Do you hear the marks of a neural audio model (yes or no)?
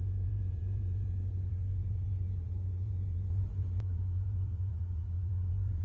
yes